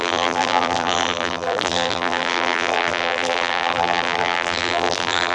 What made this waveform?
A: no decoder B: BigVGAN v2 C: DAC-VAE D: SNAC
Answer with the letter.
B